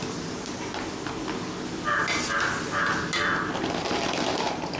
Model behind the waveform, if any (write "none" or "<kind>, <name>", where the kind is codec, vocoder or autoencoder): none